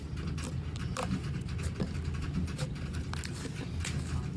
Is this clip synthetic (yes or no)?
no